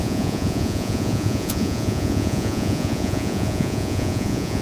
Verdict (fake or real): fake